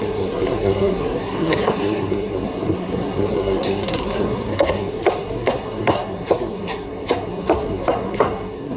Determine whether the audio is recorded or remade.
remade